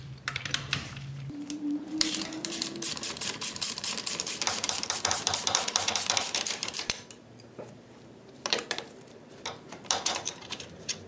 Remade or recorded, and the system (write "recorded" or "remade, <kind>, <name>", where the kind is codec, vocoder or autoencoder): remade, vocoder, BigVGAN v2